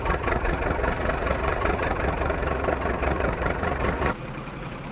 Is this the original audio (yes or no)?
no